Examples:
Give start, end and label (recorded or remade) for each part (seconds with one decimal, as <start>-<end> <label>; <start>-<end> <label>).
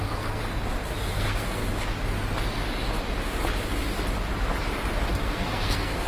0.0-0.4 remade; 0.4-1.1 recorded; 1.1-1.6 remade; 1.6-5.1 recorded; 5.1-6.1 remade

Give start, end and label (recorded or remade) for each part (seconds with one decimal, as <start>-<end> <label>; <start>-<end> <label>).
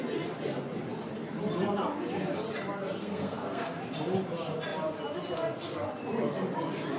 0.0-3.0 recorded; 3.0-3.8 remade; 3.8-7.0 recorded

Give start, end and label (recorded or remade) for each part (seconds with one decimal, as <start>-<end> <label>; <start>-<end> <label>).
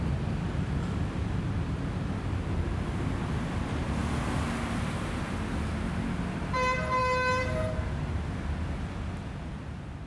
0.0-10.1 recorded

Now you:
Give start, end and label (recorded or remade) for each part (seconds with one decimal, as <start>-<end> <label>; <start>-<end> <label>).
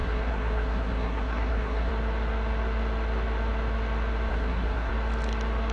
0.0-1.9 remade; 1.9-4.3 recorded; 4.3-4.9 remade; 4.9-5.7 recorded